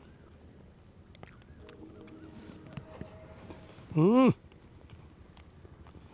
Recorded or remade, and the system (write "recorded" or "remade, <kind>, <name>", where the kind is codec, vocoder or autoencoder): recorded